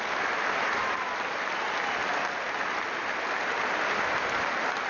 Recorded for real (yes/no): no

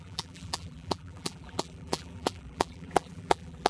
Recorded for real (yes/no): no